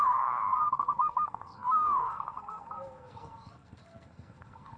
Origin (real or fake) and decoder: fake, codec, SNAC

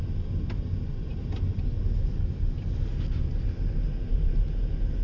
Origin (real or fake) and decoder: real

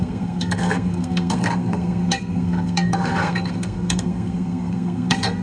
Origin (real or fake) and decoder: fake, codec, SNAC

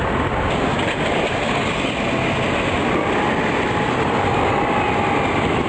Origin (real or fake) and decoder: real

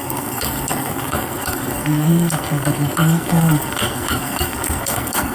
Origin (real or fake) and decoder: fake, codec, SNAC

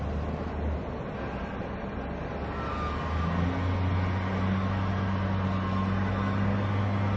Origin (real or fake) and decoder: real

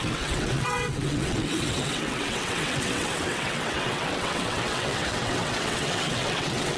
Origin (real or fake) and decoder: fake, vocoder, WaveNeXt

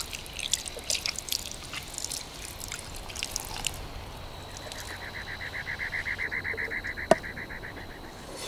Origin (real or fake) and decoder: real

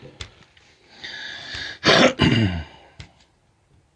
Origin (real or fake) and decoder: real